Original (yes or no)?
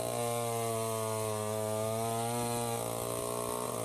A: yes